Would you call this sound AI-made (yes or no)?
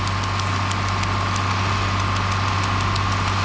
no